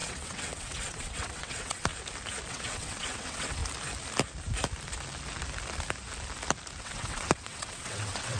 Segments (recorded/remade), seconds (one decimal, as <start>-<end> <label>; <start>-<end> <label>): 0.0-1.9 remade; 1.9-2.5 recorded; 2.5-3.6 remade; 3.6-6.8 recorded; 6.8-8.4 remade